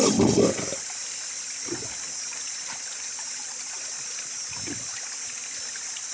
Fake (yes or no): no